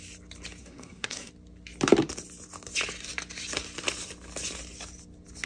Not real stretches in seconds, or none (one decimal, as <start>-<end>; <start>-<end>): 0.6-1.3